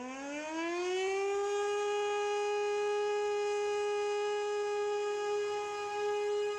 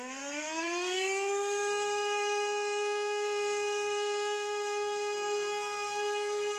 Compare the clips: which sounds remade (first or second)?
second